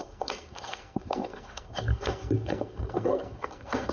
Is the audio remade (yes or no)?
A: yes